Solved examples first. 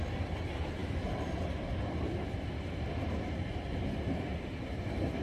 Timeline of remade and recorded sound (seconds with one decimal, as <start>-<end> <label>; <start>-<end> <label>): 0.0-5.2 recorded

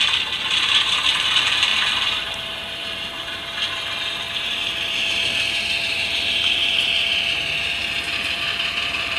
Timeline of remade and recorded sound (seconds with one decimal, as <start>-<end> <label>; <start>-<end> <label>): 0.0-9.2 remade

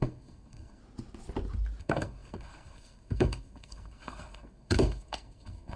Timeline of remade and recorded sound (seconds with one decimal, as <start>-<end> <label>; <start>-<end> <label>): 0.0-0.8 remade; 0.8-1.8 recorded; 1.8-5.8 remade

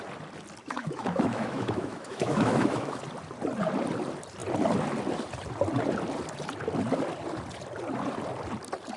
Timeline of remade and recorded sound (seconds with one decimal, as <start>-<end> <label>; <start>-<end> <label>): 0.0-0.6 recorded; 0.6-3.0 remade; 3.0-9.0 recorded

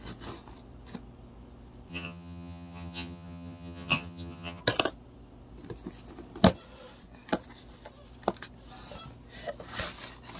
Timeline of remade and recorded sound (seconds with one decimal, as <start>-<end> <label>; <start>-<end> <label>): 0.0-1.9 recorded; 1.9-4.6 remade; 4.6-10.4 recorded

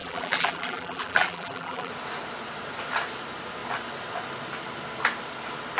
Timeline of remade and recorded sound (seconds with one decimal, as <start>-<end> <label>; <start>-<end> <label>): 0.0-1.9 remade; 1.9-5.8 recorded